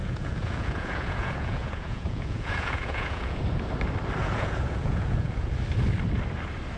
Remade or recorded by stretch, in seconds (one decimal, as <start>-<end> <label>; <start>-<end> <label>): 0.0-3.4 remade; 3.4-4.2 recorded; 4.2-5.5 remade; 5.5-6.8 recorded